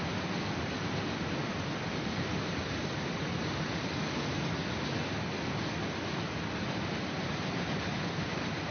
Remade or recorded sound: recorded